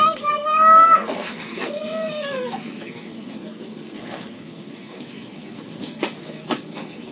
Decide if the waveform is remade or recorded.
remade